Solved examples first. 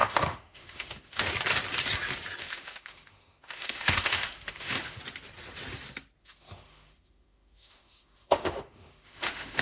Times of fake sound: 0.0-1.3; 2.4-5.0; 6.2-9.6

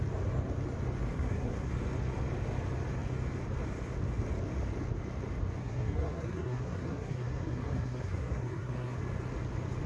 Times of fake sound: 1.1-1.7; 5.6-9.0